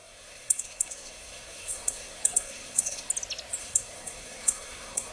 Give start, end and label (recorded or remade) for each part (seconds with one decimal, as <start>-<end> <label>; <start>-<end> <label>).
0.0-3.1 remade; 3.1-3.6 recorded; 3.6-5.1 remade

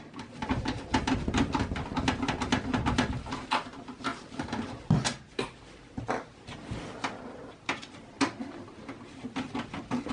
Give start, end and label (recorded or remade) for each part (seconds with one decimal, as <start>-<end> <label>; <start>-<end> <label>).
0.0-0.4 recorded; 0.4-1.1 remade; 1.1-4.1 recorded; 4.1-4.7 remade; 4.7-10.1 recorded

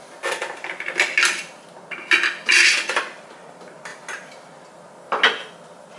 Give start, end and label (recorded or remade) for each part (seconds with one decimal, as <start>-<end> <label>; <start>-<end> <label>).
0.0-6.0 recorded

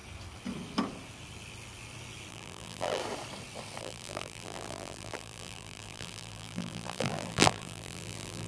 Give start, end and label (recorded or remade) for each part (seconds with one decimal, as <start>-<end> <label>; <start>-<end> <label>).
0.0-2.3 recorded; 2.3-3.0 remade; 3.0-3.8 recorded; 3.8-8.5 remade

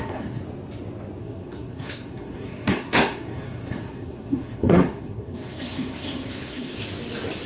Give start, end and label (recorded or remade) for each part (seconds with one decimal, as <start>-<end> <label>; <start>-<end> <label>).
0.0-0.4 remade; 0.4-1.2 recorded; 1.2-6.8 remade; 6.8-7.5 recorded